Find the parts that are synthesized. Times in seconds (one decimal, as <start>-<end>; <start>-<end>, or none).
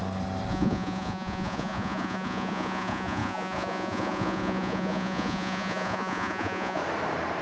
0.5-6.8